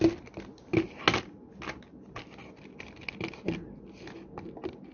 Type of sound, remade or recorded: recorded